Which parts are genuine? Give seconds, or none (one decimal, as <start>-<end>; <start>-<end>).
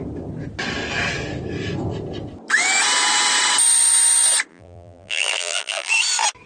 0.0-4.5; 5.9-6.5